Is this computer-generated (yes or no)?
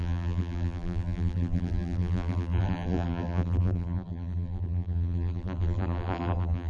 yes